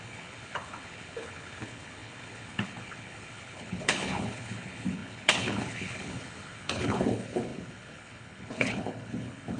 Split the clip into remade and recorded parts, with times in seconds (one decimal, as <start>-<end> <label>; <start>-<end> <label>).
0.0-9.6 remade